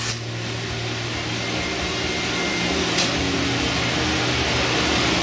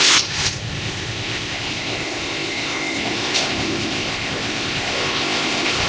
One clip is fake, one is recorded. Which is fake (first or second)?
second